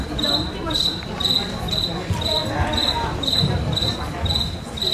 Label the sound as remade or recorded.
remade